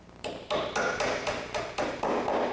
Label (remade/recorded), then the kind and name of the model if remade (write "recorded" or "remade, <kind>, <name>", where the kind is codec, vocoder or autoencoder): recorded